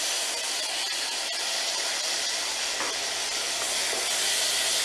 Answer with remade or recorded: recorded